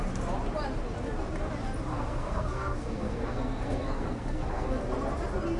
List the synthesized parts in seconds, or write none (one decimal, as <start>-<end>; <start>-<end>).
1.9-4.8